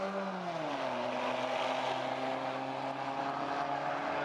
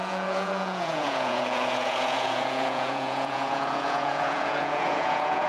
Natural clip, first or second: first